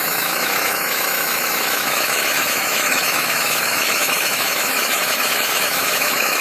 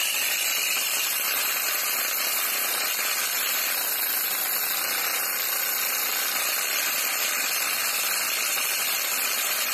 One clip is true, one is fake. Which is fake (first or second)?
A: first